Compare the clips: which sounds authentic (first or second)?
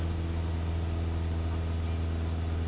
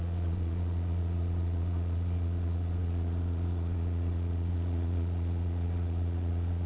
first